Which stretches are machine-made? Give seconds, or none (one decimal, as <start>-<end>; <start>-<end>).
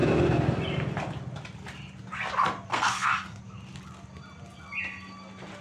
2.7-3.4